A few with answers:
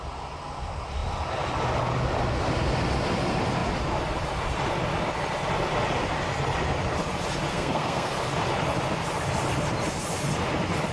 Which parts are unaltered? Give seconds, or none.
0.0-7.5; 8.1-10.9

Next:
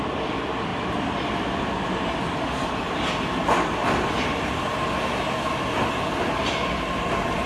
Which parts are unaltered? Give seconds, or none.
0.0-7.5